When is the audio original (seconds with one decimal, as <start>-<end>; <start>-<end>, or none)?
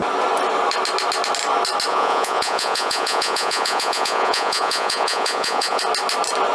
0.0-1.9; 5.8-6.5